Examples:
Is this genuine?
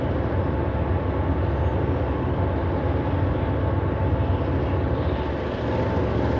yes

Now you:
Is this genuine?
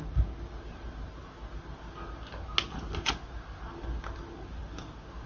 yes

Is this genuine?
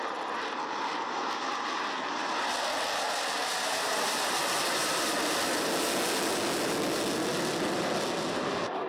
yes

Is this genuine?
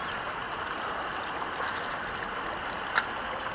yes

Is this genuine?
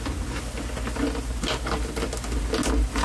yes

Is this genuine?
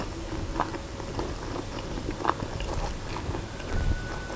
yes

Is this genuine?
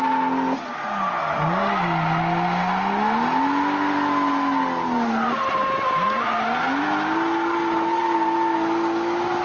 yes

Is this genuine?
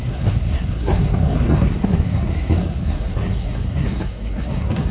no